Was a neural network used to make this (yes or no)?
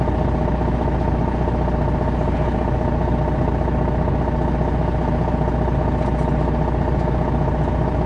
no